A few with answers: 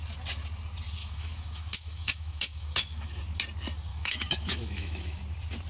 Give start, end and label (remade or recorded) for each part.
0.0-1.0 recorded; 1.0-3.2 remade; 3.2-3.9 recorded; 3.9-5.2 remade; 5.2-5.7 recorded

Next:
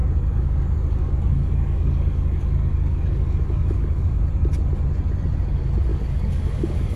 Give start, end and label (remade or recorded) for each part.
0.0-4.2 remade; 4.2-5.9 recorded; 5.9-7.0 remade

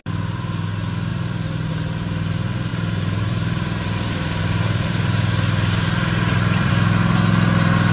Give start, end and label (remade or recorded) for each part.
0.0-1.1 recorded; 1.1-1.7 remade; 1.7-2.7 recorded; 2.7-6.7 remade; 6.7-7.9 recorded

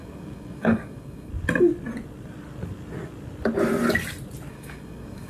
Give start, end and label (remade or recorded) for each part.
0.0-1.3 remade; 1.3-4.5 recorded; 4.5-5.3 remade